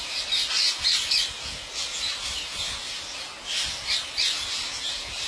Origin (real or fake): real